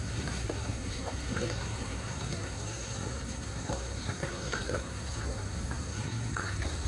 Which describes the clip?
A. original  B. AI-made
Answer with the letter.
B